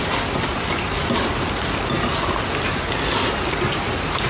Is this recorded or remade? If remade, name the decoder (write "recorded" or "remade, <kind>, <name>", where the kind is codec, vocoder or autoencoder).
recorded